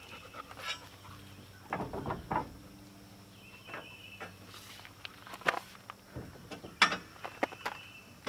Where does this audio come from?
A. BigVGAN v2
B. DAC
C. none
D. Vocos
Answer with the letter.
C